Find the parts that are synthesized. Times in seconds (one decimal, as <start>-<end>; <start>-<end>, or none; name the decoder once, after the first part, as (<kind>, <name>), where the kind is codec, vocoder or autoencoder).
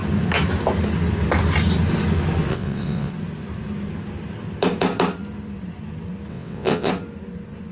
2.5-3.1 (vocoder, WaveNeXt); 6.3-6.9